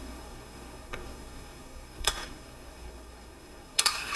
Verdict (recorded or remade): remade